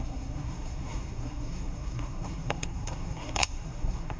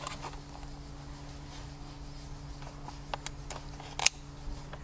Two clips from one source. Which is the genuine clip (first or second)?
second